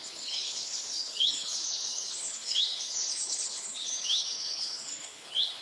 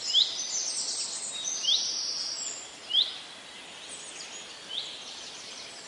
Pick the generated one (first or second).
first